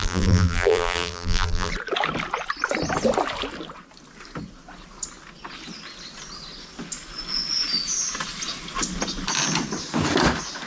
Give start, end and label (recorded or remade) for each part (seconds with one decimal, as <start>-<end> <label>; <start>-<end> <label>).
0.0-1.7 remade; 1.7-10.7 recorded